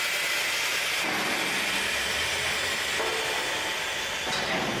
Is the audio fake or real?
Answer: real